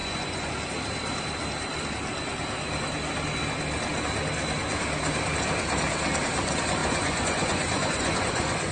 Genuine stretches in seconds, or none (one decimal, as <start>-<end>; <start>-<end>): 0.5-6.8